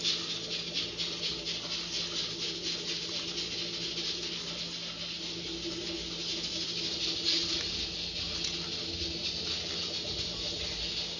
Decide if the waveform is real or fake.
real